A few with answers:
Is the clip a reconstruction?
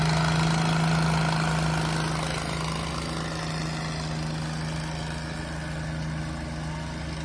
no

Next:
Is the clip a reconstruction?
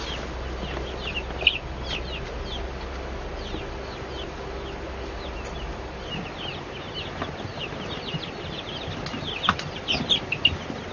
no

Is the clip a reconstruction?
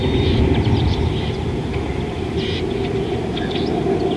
no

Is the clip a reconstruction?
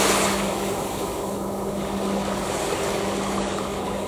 yes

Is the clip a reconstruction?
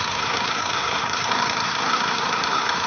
yes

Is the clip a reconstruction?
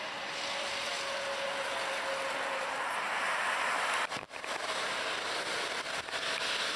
no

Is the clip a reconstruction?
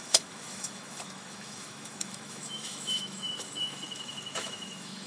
yes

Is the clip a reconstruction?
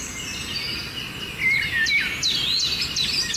no